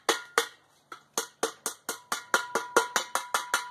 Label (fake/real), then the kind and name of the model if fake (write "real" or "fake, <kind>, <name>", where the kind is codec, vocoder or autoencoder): real